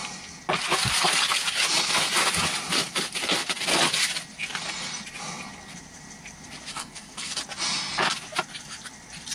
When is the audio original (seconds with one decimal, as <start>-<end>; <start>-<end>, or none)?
0.0-6.7; 7.4-9.3